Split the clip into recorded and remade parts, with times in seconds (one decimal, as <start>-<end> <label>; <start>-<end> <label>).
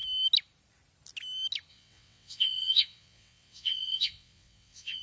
0.0-1.7 recorded; 1.7-5.0 remade